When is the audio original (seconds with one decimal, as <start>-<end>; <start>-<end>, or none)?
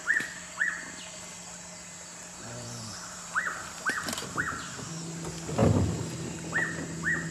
0.0-2.2; 4.4-7.3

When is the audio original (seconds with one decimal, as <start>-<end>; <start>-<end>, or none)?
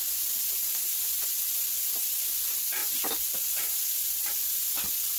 0.0-0.6; 1.1-2.8; 3.8-5.2